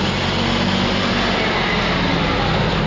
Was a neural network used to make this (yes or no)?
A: no